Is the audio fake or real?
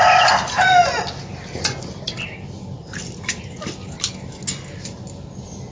real